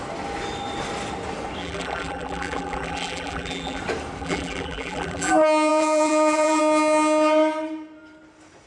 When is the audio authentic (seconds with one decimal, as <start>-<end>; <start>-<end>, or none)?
0.0-1.6; 3.8-4.2; 5.3-5.7; 6.6-8.7